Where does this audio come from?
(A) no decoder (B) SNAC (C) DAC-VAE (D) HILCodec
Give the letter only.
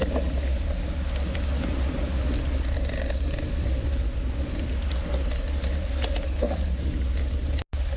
A